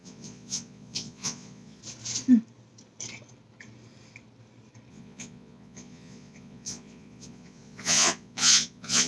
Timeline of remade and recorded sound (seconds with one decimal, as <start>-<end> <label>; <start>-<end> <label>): 0.0-1.8 remade; 1.8-4.9 recorded; 4.9-9.1 remade